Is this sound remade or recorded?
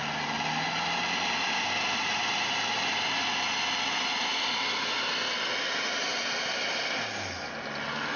recorded